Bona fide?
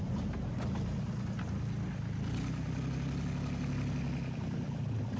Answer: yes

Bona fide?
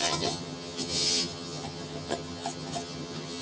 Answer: no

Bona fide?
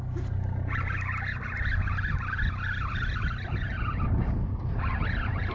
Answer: yes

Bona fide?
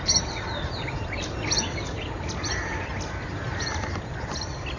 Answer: yes